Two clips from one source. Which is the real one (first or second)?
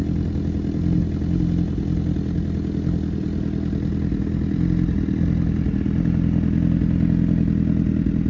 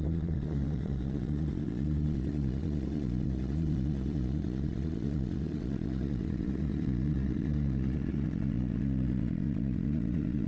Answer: first